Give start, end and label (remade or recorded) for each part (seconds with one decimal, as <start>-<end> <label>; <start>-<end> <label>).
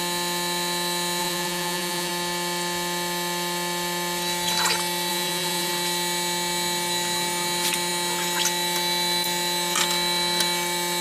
0.0-1.2 recorded; 1.2-2.1 remade; 2.1-5.1 recorded; 5.1-5.7 remade; 5.7-11.0 recorded